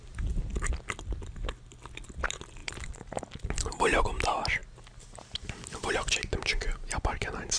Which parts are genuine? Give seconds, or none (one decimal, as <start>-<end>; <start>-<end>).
0.0-2.6; 3.2-7.6